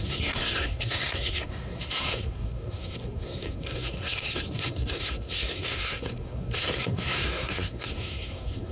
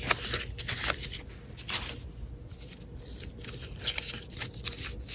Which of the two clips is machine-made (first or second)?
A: first